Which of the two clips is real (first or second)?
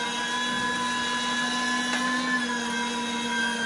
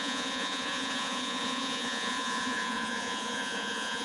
first